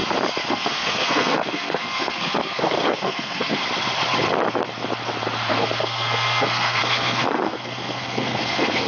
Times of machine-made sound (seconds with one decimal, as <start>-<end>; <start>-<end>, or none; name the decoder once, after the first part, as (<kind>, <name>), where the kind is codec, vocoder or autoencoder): 0.5-3.6 (codec, SNAC); 5.5-8.9